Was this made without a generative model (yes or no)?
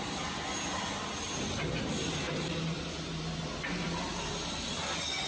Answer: yes